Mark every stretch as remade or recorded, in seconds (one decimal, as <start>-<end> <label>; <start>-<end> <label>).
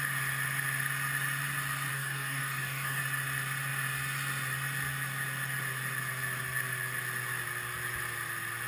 0.0-1.9 recorded; 1.9-3.0 remade; 3.0-8.7 recorded